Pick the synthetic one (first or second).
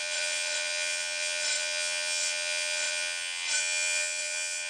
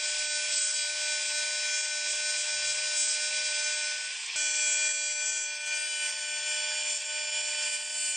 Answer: first